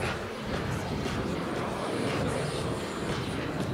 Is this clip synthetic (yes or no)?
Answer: no